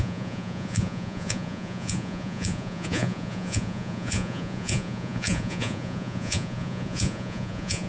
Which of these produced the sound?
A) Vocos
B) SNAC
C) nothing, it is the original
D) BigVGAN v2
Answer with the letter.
A